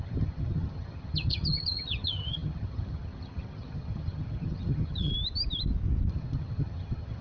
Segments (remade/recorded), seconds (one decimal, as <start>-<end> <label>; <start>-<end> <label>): 0.0-5.1 remade; 5.1-6.1 recorded; 6.1-7.2 remade